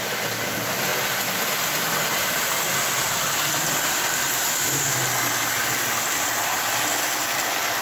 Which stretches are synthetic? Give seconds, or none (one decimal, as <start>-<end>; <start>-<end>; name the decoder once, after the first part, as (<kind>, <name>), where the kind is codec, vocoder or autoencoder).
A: none